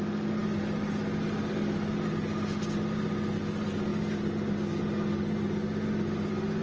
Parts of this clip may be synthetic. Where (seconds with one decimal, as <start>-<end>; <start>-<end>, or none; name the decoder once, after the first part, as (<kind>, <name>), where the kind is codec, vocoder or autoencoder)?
none